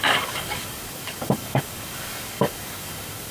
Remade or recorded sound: remade